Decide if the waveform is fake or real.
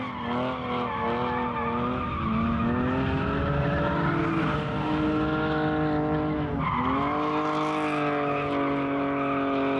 real